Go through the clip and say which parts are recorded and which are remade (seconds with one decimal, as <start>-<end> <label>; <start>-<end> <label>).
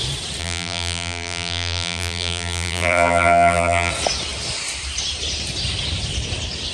0.0-0.4 recorded; 0.4-3.9 remade; 3.9-6.7 recorded